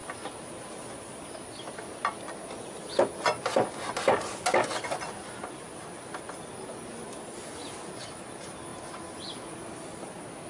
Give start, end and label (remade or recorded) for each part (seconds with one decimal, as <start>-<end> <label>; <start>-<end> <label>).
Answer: 0.0-10.5 recorded